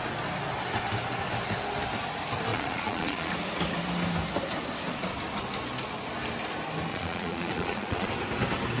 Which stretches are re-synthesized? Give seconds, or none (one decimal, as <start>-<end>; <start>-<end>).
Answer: 2.5-3.3; 6.9-8.1